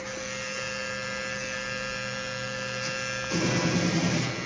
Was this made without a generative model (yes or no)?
no